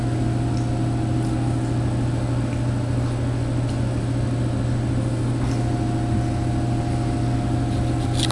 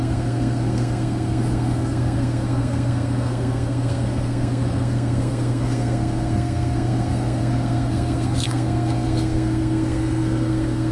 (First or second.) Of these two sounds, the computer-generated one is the second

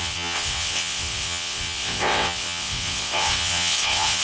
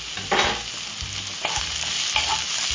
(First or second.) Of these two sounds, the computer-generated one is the first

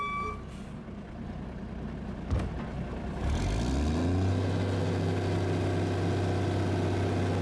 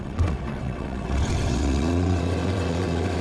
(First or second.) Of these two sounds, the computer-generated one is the second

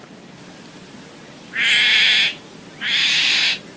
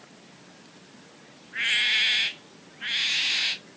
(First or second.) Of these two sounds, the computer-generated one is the first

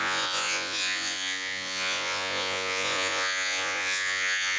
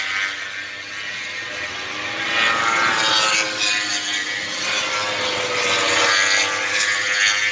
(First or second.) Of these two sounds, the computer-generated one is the first